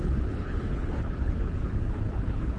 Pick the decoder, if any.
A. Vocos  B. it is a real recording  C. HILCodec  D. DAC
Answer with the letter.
C